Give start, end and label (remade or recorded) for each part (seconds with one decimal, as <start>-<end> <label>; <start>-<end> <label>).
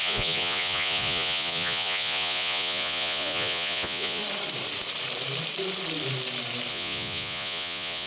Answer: 0.0-4.2 remade; 4.2-6.7 recorded; 6.7-8.1 remade